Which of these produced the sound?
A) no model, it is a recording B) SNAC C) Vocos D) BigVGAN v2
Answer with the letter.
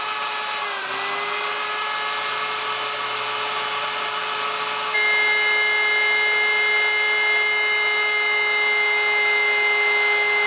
A